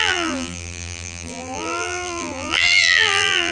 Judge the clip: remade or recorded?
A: remade